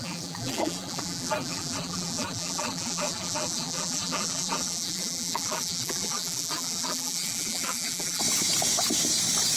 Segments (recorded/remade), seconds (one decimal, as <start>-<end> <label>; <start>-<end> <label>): 0.0-8.2 remade; 8.2-9.6 recorded